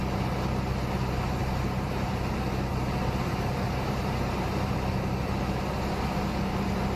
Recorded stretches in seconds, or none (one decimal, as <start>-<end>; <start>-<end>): 0.0-1.4; 2.1-2.7; 5.3-7.0